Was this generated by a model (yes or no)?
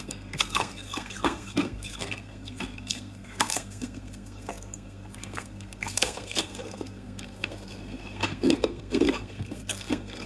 yes